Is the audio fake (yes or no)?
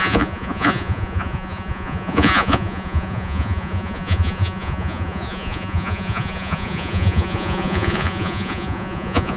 yes